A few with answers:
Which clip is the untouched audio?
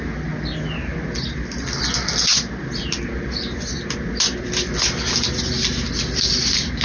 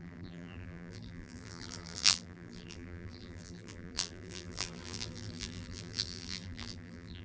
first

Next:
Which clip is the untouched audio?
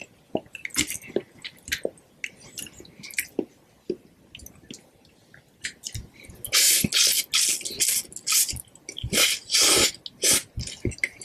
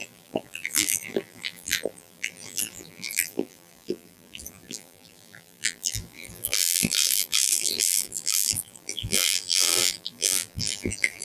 first